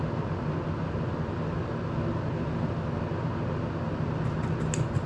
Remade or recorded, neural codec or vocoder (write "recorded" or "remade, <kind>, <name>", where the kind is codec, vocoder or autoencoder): recorded